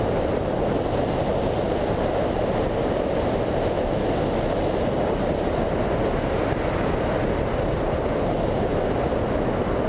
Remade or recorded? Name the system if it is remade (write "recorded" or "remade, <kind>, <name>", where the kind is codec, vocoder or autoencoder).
recorded